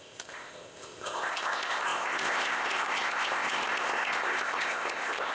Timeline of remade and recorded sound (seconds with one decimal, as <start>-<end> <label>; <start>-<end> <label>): 0.0-5.3 remade